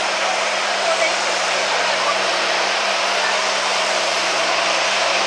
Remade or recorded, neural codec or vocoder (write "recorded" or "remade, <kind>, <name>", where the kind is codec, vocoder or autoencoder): remade, vocoder, BigVGAN v2